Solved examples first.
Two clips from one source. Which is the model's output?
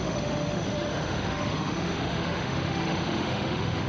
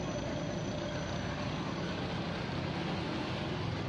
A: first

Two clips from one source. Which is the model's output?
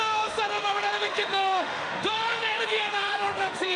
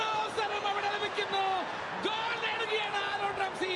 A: first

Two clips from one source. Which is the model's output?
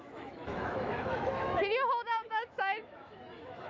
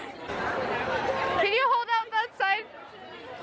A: first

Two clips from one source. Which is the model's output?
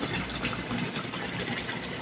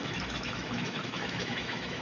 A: second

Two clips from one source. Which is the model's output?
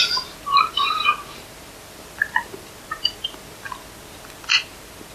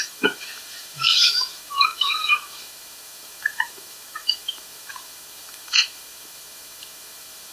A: second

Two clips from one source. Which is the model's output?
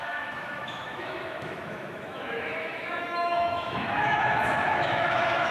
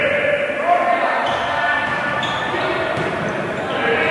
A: first